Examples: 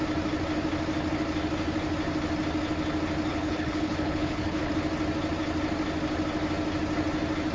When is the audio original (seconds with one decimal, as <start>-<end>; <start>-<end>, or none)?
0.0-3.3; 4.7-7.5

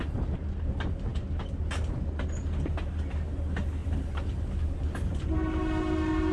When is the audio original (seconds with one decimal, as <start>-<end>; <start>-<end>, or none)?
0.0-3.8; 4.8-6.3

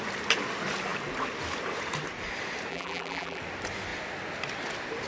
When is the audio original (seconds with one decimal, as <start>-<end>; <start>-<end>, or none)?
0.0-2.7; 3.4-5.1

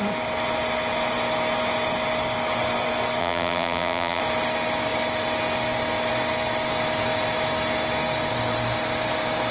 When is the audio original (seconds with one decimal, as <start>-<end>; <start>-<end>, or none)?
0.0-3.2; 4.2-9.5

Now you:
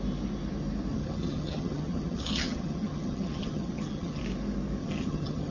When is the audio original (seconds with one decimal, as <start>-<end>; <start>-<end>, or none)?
0.0-0.9; 4.2-4.8